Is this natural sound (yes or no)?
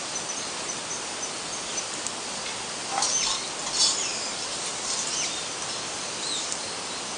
yes